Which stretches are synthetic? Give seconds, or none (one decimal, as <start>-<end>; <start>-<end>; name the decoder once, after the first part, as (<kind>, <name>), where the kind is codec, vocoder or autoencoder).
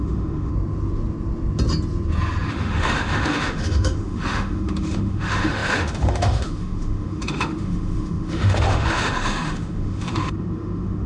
0.0-0.5 (autoencoder, DAC-VAE); 2.5-11.1